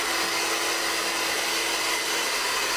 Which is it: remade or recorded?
recorded